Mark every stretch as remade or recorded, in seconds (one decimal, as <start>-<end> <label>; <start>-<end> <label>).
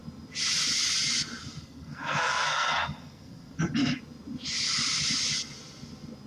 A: 0.0-1.4 recorded; 1.4-3.6 remade; 3.6-6.3 recorded